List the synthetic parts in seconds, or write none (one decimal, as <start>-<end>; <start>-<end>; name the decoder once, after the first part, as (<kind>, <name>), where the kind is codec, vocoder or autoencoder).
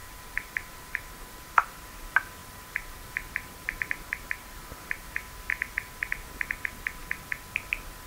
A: 0.0-2.0 (vocoder, BigVGAN v2); 2.4-5.1